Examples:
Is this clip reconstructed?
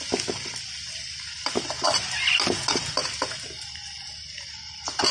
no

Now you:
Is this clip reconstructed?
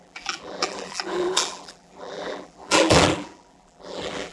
yes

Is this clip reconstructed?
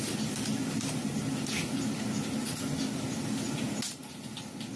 no